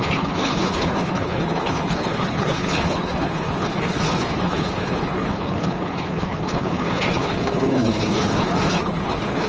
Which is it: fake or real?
fake